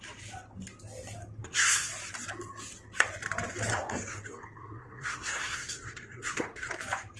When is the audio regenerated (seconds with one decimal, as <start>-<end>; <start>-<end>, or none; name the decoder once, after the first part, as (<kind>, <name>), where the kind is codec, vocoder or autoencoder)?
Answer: 1.4-1.9 (codec, SNAC); 3.7-6.7